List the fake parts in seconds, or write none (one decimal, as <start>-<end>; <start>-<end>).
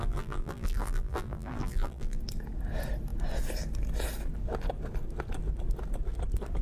0.0-2.2